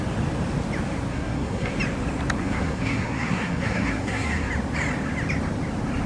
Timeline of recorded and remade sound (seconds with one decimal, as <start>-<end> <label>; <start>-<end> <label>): 0.0-1.1 recorded; 1.1-1.7 remade; 1.7-2.4 recorded; 2.4-4.5 remade; 4.5-6.1 recorded